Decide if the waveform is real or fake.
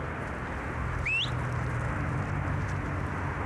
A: real